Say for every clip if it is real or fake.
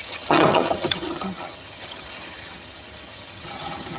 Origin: fake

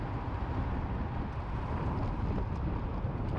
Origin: real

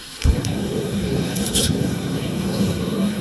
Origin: fake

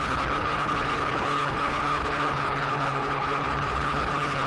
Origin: fake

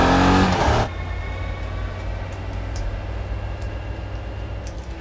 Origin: real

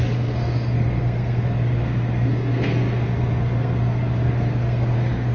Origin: fake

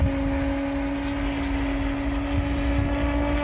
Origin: real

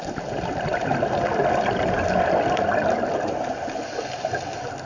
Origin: real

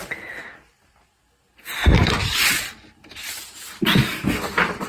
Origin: real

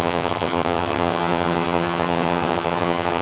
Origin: fake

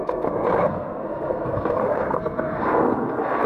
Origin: fake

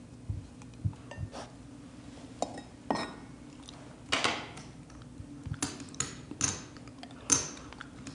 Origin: real